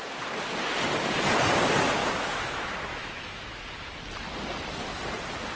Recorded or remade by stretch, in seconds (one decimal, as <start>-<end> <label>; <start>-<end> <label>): 0.0-2.0 recorded; 2.0-3.6 remade; 3.6-5.6 recorded